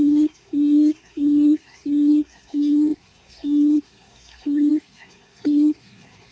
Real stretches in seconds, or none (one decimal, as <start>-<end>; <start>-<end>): none